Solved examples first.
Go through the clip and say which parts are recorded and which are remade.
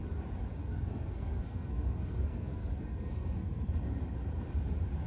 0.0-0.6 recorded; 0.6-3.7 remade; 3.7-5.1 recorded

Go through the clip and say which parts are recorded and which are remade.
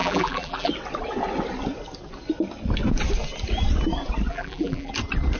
0.0-0.7 remade; 0.7-4.3 recorded; 4.3-4.9 remade; 4.9-5.4 recorded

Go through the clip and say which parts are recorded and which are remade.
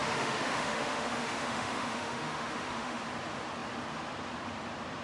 0.0-3.0 remade; 3.0-5.0 recorded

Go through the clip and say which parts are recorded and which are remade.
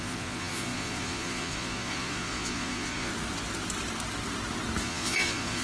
0.0-3.1 remade; 3.1-4.8 recorded; 4.8-5.6 remade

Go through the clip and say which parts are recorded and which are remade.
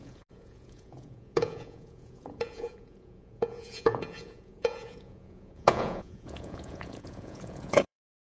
0.0-8.2 remade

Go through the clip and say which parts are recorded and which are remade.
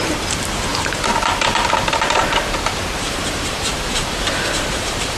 0.0-5.2 remade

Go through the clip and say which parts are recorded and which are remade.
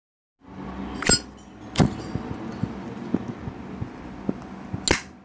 0.0-0.4 recorded; 0.4-3.5 remade; 3.5-5.2 recorded